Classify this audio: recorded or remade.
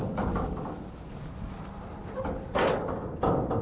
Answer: recorded